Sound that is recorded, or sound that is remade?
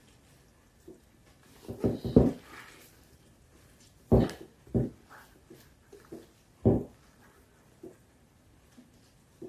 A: recorded